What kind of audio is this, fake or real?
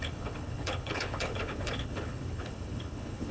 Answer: fake